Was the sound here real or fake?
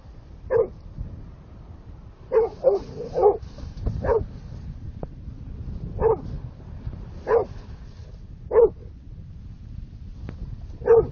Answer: real